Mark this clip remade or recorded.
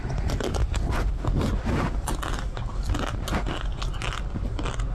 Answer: recorded